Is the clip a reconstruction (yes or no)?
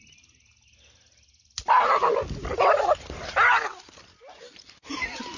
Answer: no